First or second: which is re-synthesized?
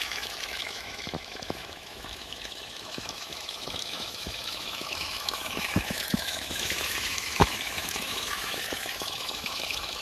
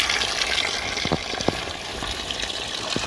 first